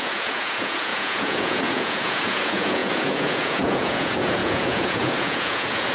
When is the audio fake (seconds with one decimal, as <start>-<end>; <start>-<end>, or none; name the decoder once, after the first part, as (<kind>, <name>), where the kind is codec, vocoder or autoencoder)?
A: 0.0-5.9 (vocoder, Vocos)